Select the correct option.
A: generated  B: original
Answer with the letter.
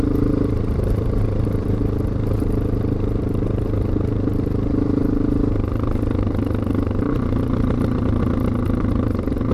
A